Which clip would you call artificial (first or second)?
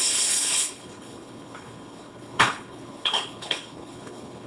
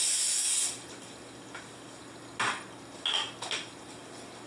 first